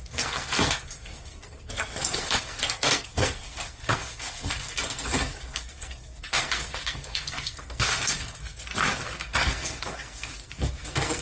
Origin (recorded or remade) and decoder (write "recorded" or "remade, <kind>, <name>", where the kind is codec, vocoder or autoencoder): remade, codec, SNAC